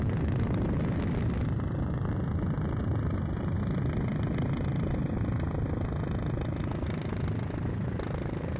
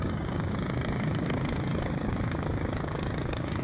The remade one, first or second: second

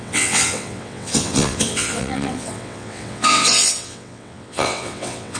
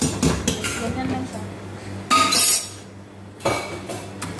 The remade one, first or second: first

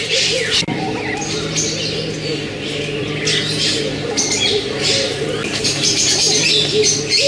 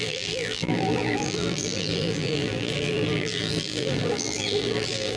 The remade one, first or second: second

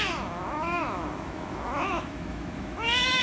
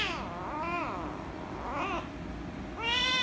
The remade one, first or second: first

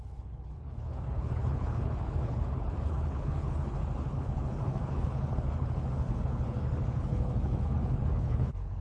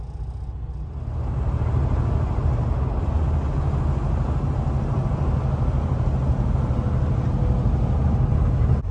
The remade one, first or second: first